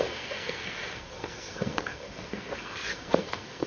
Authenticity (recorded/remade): remade